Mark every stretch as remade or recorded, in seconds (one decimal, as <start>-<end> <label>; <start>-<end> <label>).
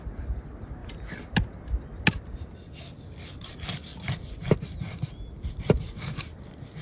0.0-3.9 recorded; 3.9-5.1 remade; 5.1-6.8 recorded